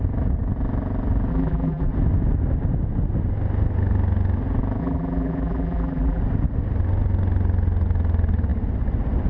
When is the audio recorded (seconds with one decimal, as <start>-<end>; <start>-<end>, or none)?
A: 0.0-1.3; 1.9-4.8; 6.2-9.3